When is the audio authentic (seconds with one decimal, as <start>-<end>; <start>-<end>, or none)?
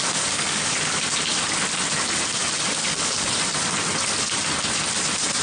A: 0.7-2.8; 3.3-5.4